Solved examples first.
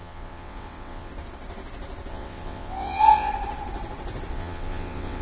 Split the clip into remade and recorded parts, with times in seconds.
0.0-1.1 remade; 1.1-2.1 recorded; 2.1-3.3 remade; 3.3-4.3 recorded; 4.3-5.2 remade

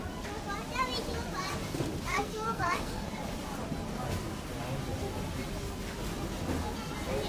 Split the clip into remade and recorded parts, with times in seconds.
0.0-2.1 recorded; 2.1-3.1 remade; 3.1-7.3 recorded

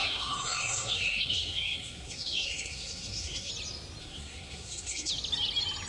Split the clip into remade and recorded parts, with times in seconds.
0.0-3.5 remade; 3.5-4.0 recorded; 4.0-5.1 remade; 5.1-5.9 recorded

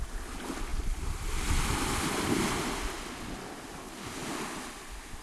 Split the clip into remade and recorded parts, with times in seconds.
0.0-0.7 recorded; 0.7-3.8 remade; 3.8-5.2 recorded

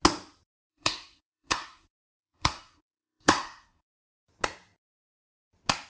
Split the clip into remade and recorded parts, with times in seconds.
0.0-0.7 recorded; 0.7-4.2 remade; 4.2-5.9 recorded

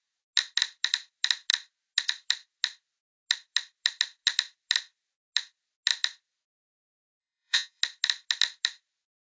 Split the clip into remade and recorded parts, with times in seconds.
0.0-7.2 recorded; 7.2-7.8 remade; 7.8-9.4 recorded

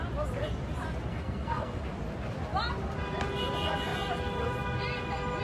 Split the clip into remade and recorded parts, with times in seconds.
0.0-1.1 recorded; 1.1-1.8 remade; 1.8-5.4 recorded

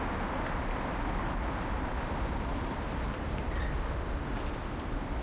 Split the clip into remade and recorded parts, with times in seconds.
0.0-2.5 recorded; 2.5-3.9 remade; 3.9-5.2 recorded